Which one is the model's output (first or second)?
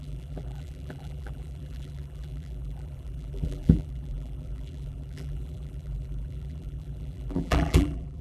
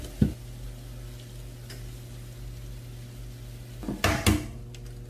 first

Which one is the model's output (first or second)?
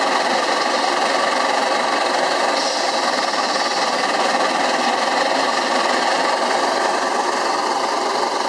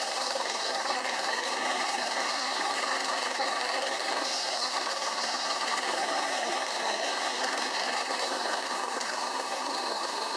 second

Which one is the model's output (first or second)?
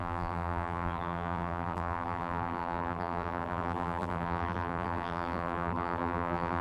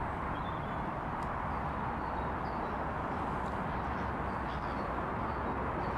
first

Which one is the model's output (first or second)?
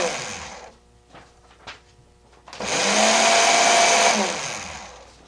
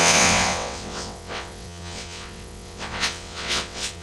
second